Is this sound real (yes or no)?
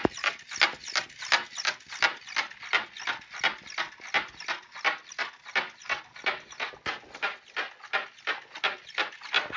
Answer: yes